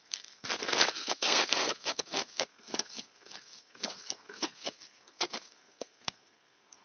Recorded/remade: remade